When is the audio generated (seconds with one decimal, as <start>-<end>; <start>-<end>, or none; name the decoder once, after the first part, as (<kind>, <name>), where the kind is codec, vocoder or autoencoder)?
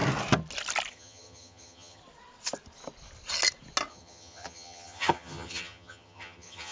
0.9-2.0 (vocoder, HiFi-GAN); 3.9-6.7